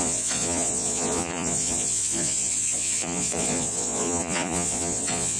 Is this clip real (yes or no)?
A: no